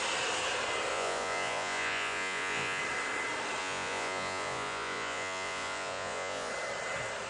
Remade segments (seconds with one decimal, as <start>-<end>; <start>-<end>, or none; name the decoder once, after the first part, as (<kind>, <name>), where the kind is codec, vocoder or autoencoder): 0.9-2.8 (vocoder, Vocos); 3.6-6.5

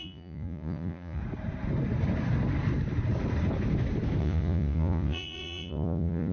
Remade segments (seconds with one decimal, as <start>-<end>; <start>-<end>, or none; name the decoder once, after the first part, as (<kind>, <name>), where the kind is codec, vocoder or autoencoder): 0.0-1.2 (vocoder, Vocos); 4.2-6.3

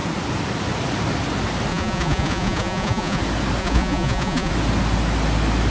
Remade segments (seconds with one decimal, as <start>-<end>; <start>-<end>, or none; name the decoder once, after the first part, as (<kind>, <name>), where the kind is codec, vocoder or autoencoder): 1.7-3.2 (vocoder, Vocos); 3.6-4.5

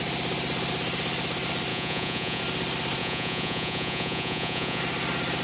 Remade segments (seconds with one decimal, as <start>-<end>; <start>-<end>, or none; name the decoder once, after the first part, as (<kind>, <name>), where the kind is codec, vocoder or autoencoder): 1.7-2.4 (vocoder, Vocos); 3.0-4.8